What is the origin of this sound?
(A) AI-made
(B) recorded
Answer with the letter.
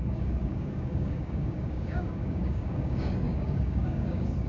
A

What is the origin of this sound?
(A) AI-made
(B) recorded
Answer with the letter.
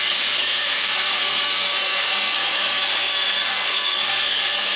A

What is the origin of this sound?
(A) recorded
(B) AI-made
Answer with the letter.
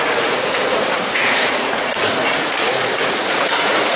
B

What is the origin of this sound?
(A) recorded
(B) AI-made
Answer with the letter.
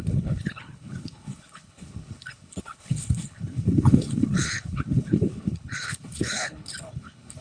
B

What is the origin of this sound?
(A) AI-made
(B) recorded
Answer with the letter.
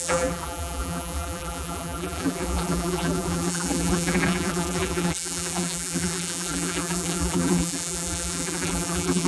A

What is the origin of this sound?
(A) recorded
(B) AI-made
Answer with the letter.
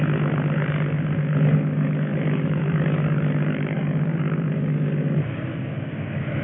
B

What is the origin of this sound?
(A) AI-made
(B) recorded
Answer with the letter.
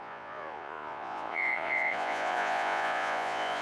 A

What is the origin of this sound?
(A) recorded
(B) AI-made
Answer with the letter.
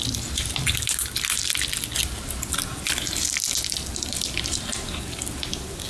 A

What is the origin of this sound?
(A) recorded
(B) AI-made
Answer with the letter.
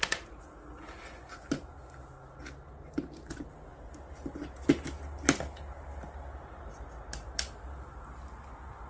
A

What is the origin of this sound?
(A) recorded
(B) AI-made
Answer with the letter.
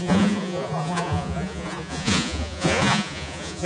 B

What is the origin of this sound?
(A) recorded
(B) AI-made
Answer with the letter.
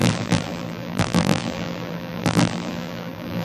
B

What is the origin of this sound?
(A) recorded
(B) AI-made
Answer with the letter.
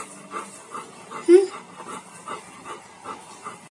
A